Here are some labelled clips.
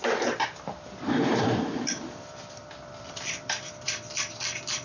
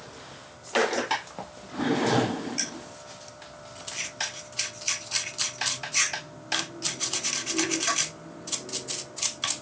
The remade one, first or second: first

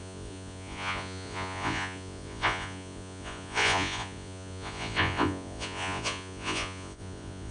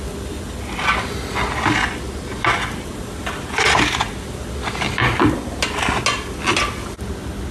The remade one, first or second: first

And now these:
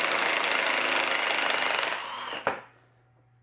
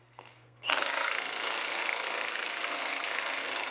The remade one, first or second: second